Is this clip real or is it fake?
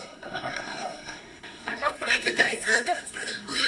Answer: fake